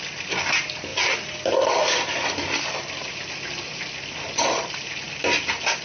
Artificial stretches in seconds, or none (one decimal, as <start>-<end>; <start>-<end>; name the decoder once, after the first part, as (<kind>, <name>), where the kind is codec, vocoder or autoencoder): none